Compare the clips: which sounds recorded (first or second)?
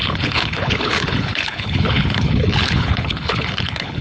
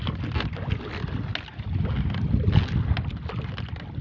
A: second